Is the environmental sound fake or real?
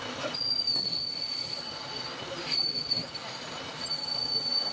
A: real